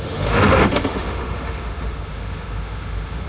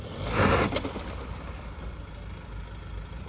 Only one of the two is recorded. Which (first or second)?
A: second